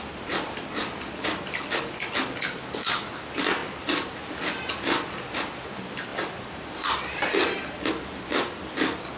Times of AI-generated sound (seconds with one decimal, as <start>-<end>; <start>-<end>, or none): none